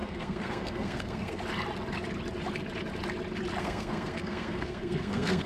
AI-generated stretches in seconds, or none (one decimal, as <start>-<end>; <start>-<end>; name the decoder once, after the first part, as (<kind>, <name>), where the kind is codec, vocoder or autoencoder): 0.0-1.4 (codec, SNAC); 3.6-5.5